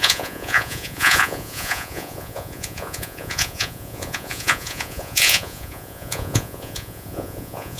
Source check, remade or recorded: remade